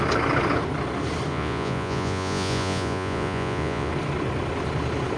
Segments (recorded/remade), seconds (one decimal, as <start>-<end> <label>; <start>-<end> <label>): 0.0-1.3 recorded; 1.3-3.9 remade; 3.9-5.2 recorded